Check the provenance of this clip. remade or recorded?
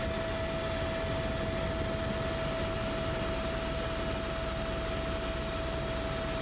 recorded